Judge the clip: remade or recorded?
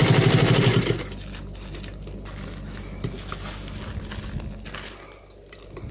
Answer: recorded